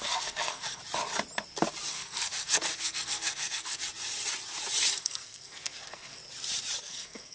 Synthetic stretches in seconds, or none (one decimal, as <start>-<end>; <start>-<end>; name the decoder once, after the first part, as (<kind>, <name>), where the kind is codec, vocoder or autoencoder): 0.0-0.8 (codec, SNAC); 1.9-3.8; 4.9-6.2; 6.8-7.3